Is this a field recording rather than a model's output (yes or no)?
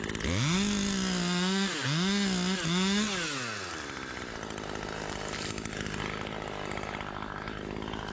yes